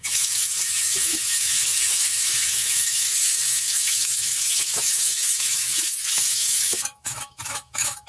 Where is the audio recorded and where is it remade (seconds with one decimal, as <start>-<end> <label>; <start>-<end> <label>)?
0.0-8.1 remade